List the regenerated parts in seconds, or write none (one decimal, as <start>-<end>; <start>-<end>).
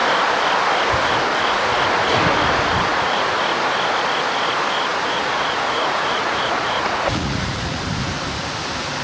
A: 2.9-3.4; 4.9-7.8